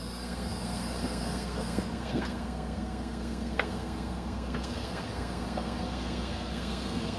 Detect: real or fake fake